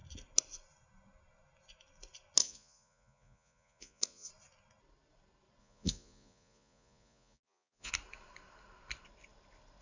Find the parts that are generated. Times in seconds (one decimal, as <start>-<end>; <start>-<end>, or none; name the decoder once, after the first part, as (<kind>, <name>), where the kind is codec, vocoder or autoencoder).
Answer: 2.4-4.3 (vocoder, Vocos); 5.6-7.9